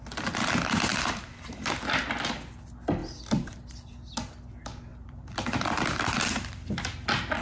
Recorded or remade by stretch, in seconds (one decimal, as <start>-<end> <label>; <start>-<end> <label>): 0.0-0.9 recorded; 0.9-2.0 remade; 2.0-4.9 recorded; 4.9-6.7 remade; 6.7-7.4 recorded